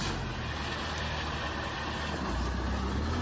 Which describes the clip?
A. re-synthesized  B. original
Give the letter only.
B